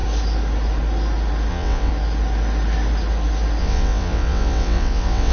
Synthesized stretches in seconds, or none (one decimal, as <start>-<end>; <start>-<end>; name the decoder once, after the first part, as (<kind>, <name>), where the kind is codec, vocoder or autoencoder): 1.5-1.9 (vocoder, WaveNeXt); 3.6-5.3